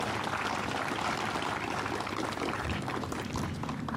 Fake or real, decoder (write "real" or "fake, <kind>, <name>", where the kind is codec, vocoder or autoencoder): real